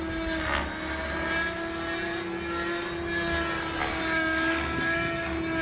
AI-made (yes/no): no